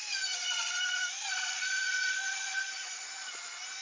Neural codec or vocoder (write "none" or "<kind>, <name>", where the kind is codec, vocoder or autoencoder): vocoder, Vocos